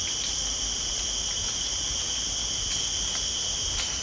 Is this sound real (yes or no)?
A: yes